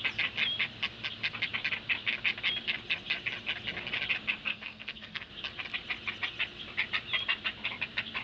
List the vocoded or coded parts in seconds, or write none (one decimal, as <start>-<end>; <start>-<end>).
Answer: 4.5-5.3